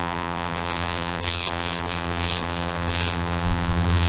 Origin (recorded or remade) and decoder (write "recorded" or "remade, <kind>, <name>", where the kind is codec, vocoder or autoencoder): remade, vocoder, BigVGAN v2